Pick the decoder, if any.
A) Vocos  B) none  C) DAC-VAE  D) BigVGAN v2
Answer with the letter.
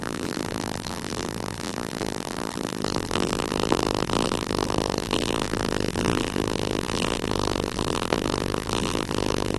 D